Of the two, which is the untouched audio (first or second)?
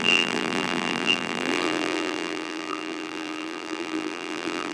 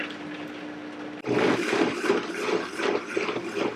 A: second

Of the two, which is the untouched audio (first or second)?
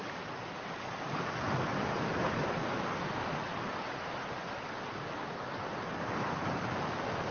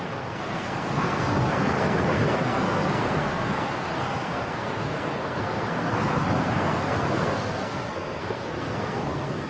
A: first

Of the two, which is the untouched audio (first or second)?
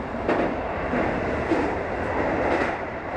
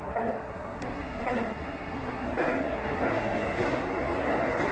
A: first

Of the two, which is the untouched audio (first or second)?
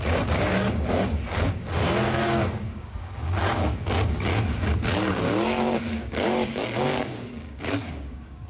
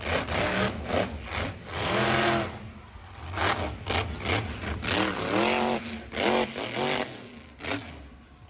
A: second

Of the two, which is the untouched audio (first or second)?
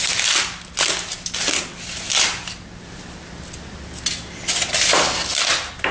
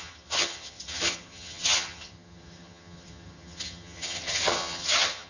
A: first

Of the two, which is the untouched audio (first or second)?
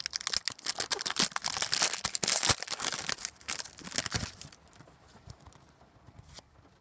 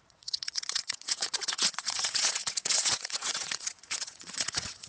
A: first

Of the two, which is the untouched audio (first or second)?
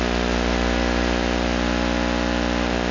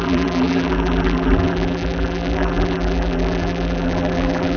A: first